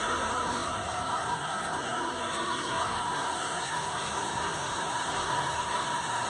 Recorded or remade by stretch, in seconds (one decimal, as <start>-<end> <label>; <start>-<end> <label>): 0.0-6.3 remade